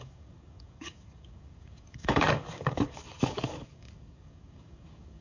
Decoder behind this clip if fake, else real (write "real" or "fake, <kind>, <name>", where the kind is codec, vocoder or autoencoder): fake, codec, DAC